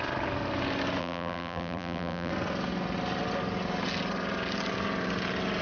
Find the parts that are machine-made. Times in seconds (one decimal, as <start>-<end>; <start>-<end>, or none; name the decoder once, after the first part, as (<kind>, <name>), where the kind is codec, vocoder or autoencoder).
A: 1.0-2.3 (vocoder, BigVGAN v2)